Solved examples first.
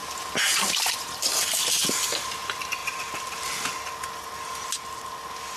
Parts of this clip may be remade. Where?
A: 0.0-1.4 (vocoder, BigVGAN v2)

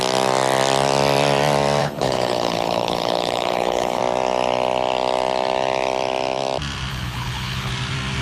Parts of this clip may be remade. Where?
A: 1.8-4.0 (codec, HILCodec); 6.9-7.7

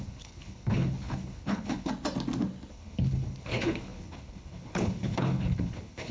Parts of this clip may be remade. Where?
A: 0.0-1.9 (codec, HILCodec); 2.7-6.1